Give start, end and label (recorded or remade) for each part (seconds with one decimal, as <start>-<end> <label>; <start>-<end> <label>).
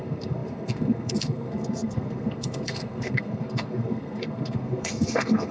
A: 0.0-5.5 remade